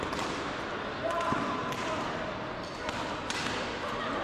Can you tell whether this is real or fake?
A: real